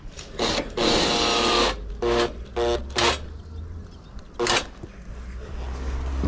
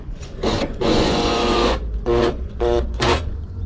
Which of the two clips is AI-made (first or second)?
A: second